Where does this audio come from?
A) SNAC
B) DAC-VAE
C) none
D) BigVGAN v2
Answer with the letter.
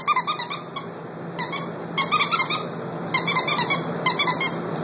C